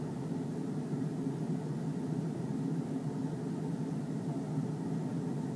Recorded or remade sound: recorded